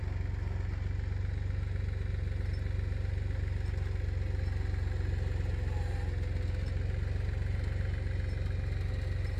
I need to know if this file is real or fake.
real